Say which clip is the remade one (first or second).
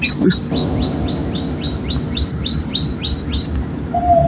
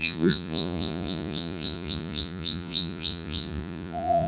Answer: second